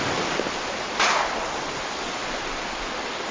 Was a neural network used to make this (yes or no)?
no